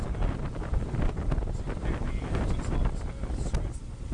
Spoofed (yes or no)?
no